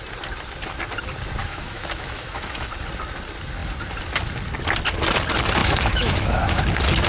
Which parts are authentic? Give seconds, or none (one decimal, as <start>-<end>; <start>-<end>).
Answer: 0.0-1.4; 2.7-5.6; 6.6-7.1